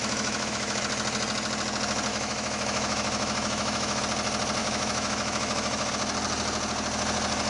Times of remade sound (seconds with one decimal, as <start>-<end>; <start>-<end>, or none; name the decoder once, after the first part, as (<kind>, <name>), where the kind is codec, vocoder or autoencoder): 0.0-0.8 (autoencoder, DAC-VAE); 2.1-4.0; 4.6-5.9